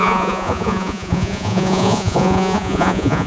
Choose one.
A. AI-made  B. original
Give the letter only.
A